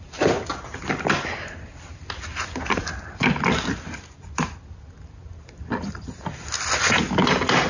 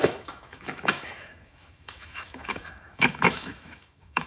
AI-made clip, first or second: second